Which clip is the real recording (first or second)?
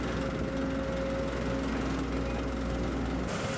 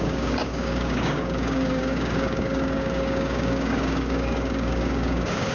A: first